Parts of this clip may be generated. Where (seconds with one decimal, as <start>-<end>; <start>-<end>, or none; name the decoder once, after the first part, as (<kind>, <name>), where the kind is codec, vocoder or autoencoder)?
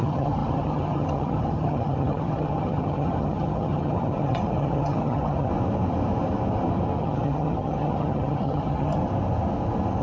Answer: 0.0-5.5 (vocoder, HiFi-GAN); 7.0-9.0